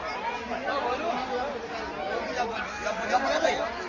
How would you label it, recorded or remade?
recorded